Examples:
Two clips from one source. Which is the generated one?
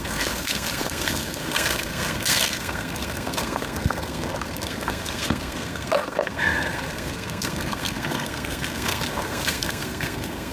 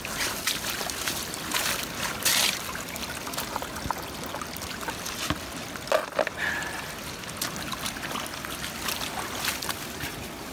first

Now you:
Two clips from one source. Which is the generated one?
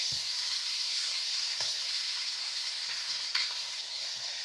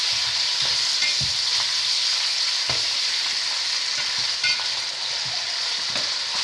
first